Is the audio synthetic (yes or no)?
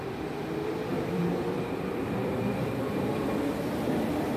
yes